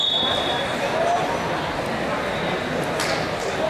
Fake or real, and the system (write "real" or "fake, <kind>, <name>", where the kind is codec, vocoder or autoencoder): real